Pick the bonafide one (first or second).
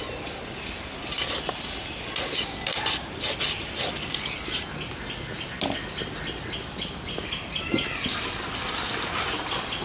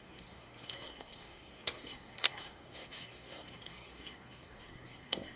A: first